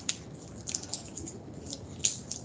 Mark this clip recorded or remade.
recorded